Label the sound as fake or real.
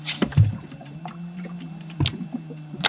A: fake